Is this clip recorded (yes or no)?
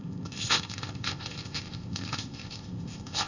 no